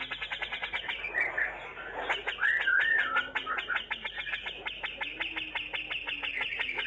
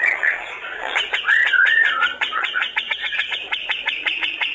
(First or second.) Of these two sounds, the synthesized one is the second